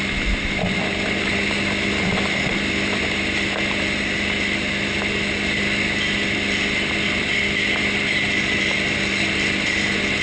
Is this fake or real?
real